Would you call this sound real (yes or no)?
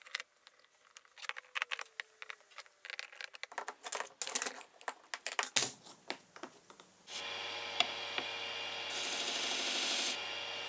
yes